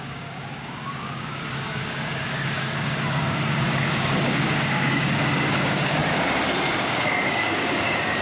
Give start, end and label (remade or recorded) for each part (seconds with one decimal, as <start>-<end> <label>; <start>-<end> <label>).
0.0-6.0 remade; 6.0-6.7 recorded; 6.7-8.2 remade